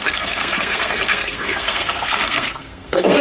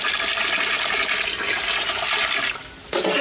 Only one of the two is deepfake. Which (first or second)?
first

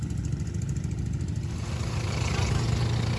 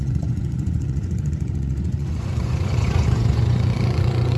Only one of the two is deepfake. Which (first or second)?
second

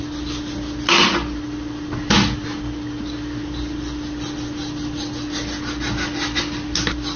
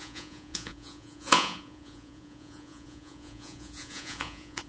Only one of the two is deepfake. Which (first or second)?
second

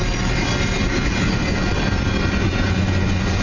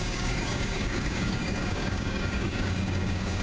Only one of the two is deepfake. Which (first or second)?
second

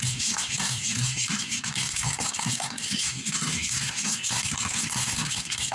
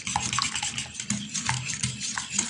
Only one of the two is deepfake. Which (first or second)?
first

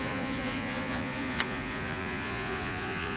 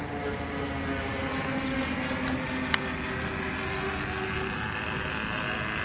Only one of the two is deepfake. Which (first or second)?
first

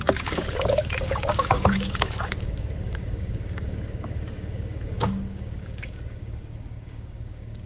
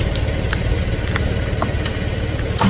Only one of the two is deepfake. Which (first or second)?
first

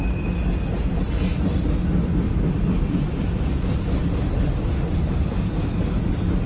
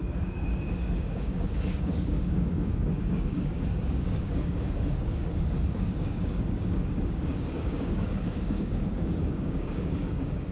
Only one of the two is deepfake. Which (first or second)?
second